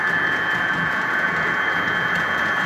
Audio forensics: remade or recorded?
remade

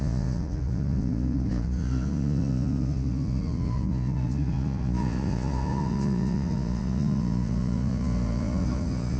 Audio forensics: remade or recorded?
remade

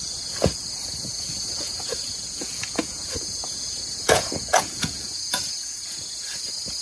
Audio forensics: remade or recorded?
remade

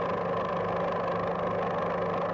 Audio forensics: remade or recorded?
recorded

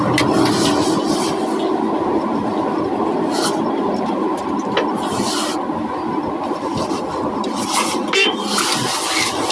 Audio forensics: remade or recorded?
recorded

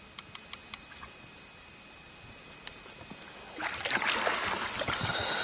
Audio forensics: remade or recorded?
recorded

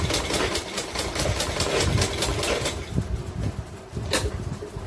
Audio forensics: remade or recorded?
recorded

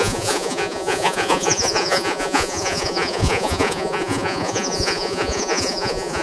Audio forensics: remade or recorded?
remade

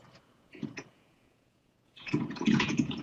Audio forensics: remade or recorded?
remade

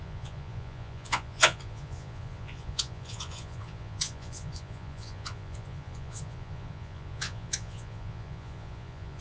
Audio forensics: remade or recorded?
remade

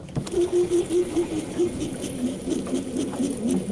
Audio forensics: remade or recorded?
recorded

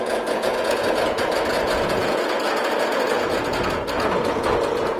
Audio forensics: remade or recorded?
remade